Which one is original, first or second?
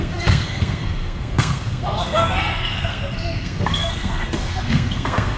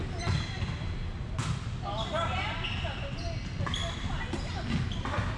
second